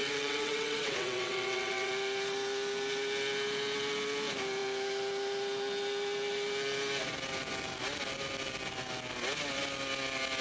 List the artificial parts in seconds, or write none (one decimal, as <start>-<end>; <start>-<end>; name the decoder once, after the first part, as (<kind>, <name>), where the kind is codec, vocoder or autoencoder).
0.0-1.9 (vocoder, WaveNeXt)